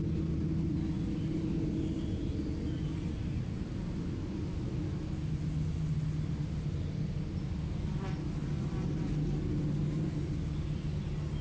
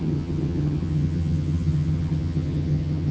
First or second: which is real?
first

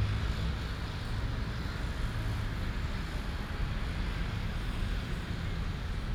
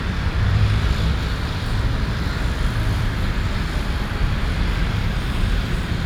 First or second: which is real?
first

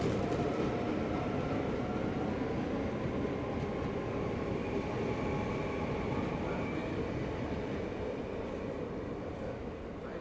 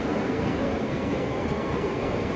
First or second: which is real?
first